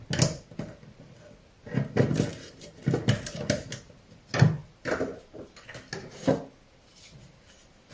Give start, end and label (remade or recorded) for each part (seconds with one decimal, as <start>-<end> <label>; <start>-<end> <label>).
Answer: 0.0-2.3 recorded; 2.3-2.8 remade; 2.8-7.9 recorded